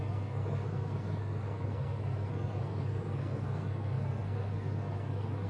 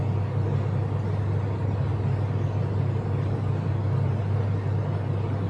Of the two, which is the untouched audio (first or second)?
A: second